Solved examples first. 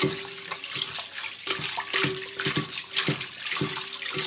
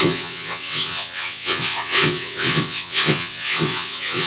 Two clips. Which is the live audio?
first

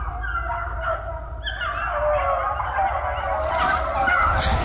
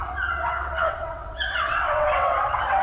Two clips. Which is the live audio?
first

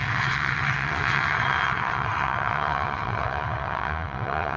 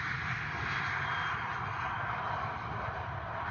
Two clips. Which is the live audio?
second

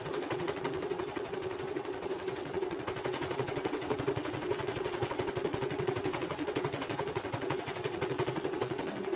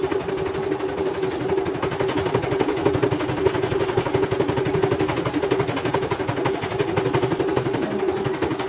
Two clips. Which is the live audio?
second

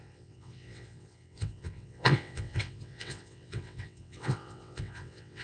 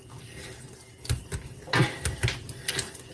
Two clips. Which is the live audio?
second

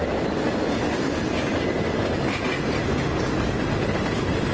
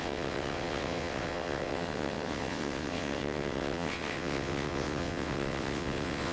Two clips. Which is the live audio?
first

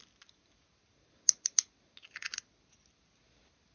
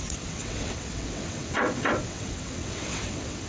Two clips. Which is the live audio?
first